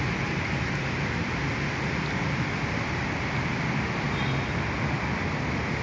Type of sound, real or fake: real